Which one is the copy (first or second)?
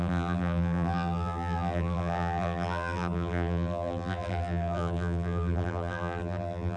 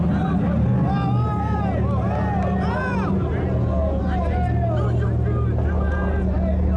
first